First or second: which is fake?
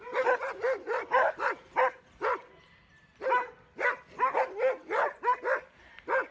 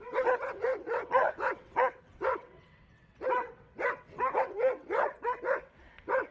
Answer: second